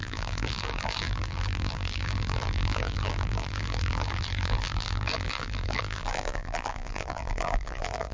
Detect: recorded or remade remade